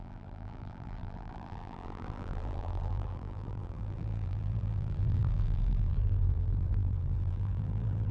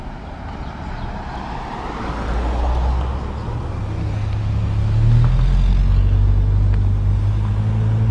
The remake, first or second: first